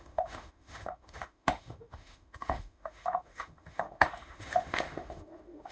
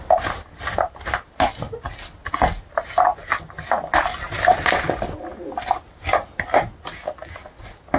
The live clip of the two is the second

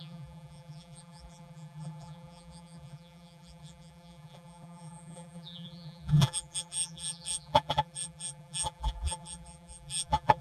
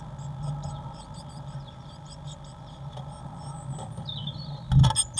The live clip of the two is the second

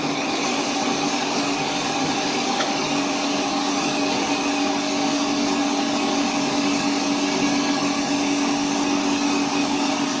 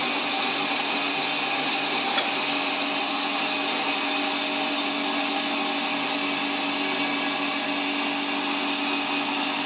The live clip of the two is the second